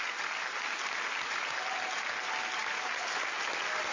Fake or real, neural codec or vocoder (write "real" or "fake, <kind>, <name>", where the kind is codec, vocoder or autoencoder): real